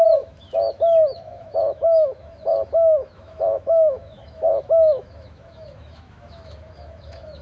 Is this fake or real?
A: fake